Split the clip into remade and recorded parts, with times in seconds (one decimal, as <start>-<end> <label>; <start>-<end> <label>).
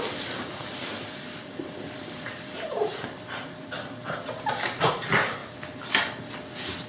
0.0-0.8 recorded; 0.8-4.9 remade; 4.9-6.9 recorded